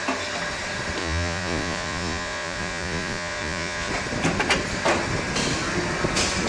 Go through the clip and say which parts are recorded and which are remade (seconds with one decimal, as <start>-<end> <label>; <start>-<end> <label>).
0.0-1.0 recorded; 1.0-3.9 remade; 3.9-6.5 recorded